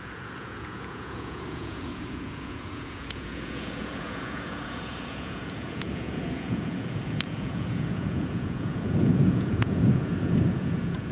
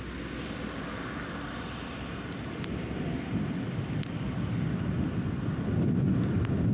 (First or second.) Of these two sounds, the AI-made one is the first